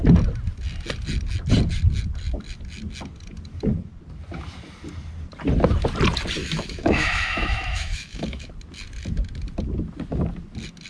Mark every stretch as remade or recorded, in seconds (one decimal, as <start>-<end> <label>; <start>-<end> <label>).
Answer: 0.0-6.4 recorded; 6.4-8.5 remade; 8.5-10.9 recorded